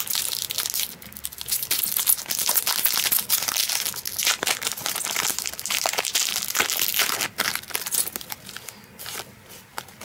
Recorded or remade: recorded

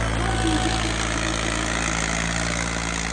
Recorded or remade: recorded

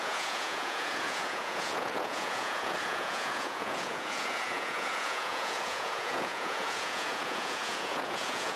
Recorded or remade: remade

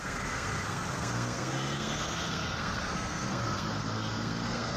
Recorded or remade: remade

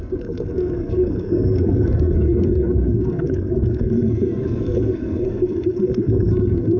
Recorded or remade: remade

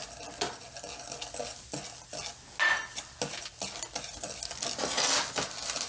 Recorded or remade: recorded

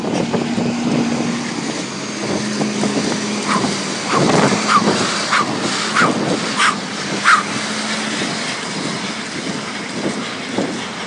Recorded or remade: recorded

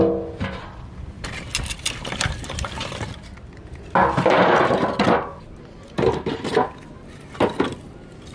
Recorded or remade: recorded